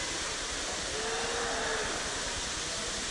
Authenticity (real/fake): real